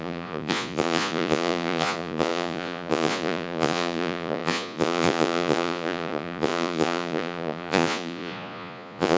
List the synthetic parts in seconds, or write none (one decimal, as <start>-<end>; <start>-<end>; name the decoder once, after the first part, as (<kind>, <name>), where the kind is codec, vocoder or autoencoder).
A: 0.0-9.2 (vocoder, Vocos)